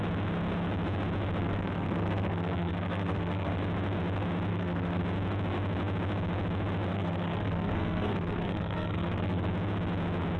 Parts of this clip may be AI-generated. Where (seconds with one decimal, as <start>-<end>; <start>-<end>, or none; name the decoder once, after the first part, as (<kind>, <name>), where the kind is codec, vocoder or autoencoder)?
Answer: 1.4-3.5 (codec, SNAC); 4.5-5.0; 6.9-9.5